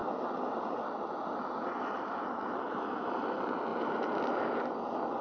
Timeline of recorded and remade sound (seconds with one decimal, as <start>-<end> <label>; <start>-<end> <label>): 0.0-5.2 recorded